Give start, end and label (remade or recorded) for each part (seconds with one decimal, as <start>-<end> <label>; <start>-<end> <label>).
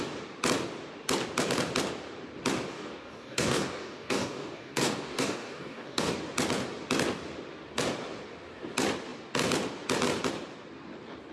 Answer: 0.0-2.7 recorded; 2.7-6.2 remade; 6.2-11.3 recorded